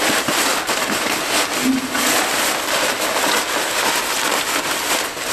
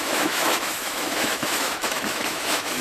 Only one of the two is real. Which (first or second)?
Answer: first